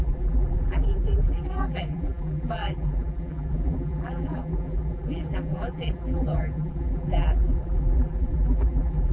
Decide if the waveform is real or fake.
fake